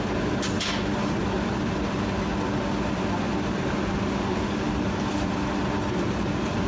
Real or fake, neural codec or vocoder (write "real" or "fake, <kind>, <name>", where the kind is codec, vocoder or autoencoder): real